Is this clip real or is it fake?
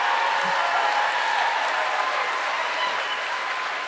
real